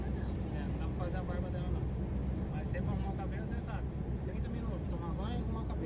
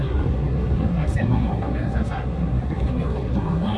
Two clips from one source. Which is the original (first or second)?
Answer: first